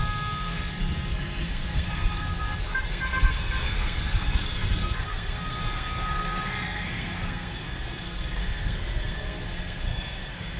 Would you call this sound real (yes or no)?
no